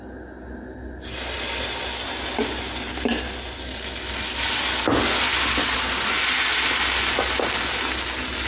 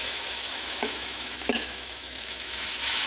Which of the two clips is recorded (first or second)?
first